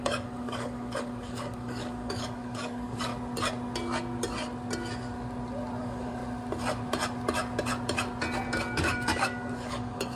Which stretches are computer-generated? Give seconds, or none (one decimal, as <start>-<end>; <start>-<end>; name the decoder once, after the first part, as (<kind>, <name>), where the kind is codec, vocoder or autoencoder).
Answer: 0.0-3.1 (codec, DAC); 5.8-6.2; 8.6-10.2